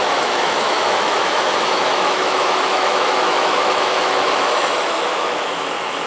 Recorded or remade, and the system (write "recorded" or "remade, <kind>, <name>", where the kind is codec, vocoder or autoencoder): remade, autoencoder, DAC-VAE